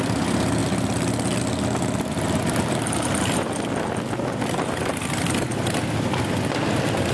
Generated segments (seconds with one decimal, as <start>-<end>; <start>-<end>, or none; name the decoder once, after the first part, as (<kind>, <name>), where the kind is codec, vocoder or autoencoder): none